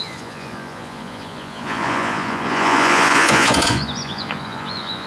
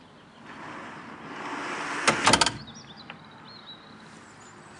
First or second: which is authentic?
second